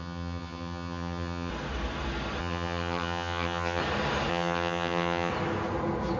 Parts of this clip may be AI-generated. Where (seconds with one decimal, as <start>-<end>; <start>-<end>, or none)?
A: 0.0-1.5; 2.4-3.8; 4.3-5.3